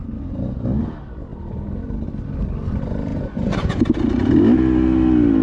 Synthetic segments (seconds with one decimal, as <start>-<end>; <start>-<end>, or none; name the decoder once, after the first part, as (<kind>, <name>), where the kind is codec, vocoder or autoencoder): 3.1-3.8 (vocoder, Vocos)